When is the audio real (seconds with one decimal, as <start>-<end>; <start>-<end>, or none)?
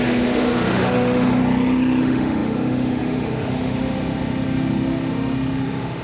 1.4-2.0